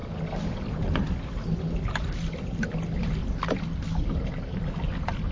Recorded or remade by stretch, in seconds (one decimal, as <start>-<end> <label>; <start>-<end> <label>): 0.0-5.3 recorded